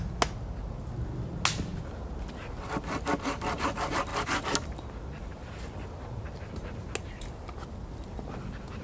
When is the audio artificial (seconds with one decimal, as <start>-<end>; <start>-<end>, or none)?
none